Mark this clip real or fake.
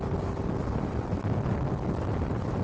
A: real